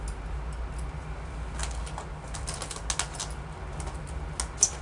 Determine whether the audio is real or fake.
real